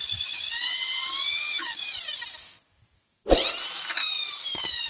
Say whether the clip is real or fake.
real